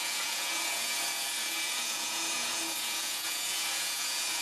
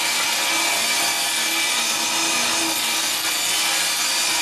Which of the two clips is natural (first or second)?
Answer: second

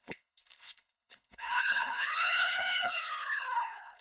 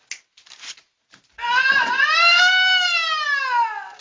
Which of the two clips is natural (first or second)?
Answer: second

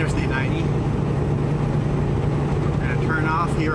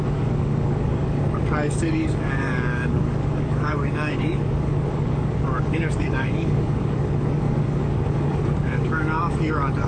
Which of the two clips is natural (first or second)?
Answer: first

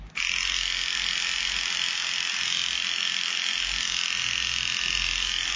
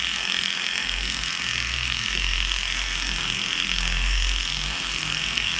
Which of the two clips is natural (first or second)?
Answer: first